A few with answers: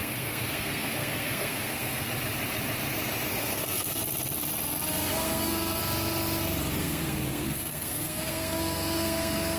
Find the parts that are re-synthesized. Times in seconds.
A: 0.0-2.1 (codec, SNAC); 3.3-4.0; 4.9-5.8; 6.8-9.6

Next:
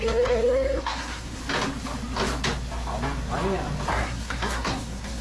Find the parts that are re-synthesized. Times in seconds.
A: 0.0-1.4 (codec, SNAC); 3.9-5.2